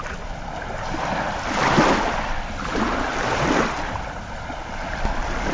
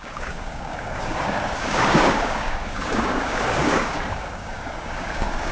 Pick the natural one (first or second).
first